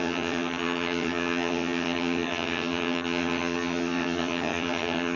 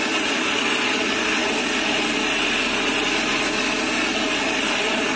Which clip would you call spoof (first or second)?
first